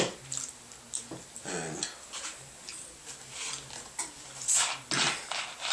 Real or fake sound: real